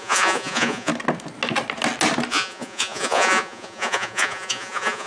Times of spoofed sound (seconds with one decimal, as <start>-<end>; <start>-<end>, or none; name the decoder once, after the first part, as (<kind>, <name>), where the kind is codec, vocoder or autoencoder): 0.0-0.9 (vocoder, Vocos); 2.3-5.1